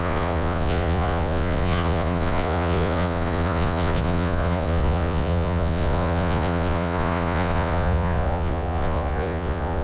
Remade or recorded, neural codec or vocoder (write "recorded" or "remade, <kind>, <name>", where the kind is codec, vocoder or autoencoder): remade, vocoder, Vocos